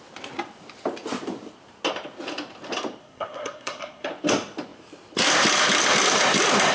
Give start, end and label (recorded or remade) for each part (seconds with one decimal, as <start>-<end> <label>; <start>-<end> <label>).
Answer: 0.0-3.0 recorded; 3.0-4.1 remade; 4.1-6.7 recorded